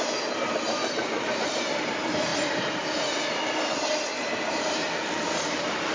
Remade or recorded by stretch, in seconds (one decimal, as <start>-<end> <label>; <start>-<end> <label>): 0.0-2.3 remade; 2.3-4.5 recorded; 4.5-5.9 remade